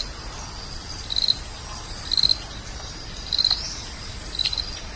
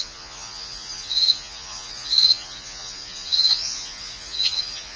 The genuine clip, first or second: first